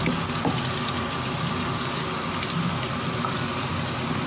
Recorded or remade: recorded